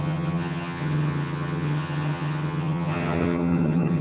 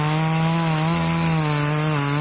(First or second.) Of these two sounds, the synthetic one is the first